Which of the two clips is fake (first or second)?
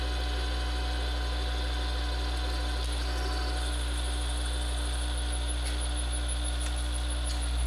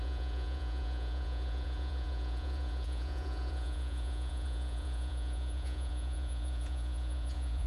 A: second